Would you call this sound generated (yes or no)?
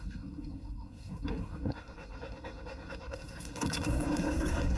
yes